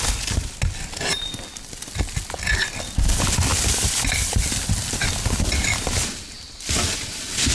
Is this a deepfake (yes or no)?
no